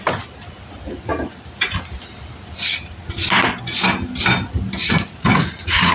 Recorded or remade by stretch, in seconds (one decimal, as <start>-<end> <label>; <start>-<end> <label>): 0.0-4.8 recorded; 4.8-5.9 remade